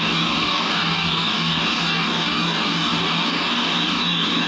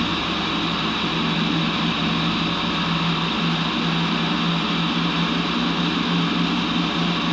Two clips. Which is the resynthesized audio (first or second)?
first